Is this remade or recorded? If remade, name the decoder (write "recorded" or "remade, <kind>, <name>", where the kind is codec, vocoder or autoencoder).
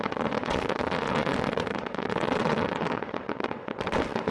remade, vocoder, WaveNeXt